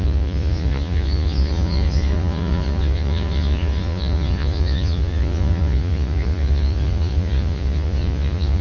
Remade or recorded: remade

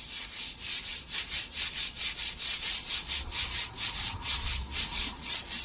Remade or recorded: remade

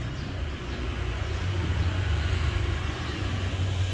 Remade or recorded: remade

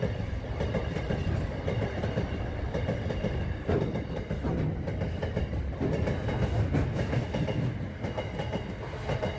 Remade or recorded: recorded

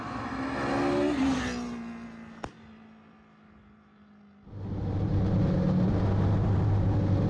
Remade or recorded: recorded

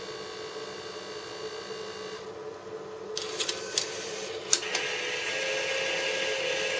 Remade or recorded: recorded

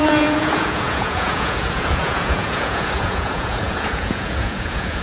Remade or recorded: remade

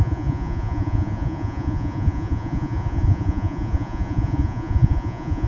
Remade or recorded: remade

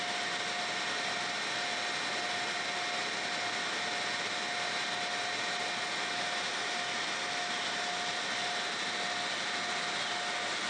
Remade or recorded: recorded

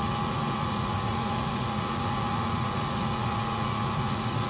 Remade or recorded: remade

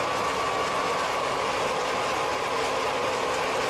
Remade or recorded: recorded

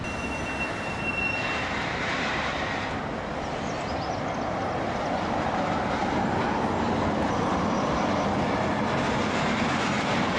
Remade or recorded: recorded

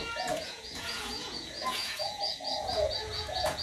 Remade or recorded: remade